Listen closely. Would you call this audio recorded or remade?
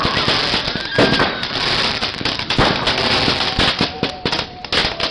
recorded